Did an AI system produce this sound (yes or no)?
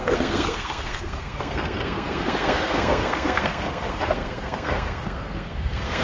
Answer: yes